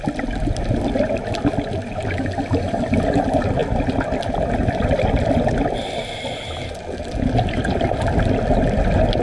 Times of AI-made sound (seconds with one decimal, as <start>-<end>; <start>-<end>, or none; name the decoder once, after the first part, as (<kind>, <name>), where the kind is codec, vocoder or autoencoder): none

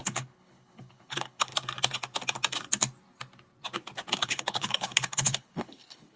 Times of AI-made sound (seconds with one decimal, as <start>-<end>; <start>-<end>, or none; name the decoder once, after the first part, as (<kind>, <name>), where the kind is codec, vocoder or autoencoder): 0.0-1.5 (codec, HILCodec); 4.2-6.2